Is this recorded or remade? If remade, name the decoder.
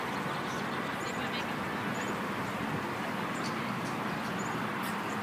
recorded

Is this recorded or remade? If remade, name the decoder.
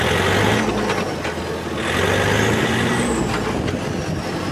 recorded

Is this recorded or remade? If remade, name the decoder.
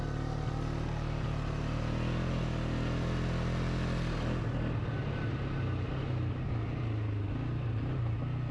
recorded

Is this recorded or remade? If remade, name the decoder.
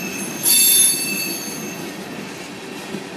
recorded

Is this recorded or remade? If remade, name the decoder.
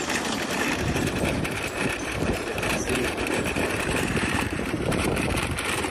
remade, vocoder, BigVGAN v2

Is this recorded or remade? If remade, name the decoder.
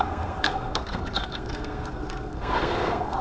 remade, codec, SNAC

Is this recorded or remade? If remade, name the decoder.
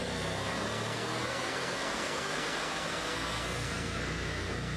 remade, codec, SNAC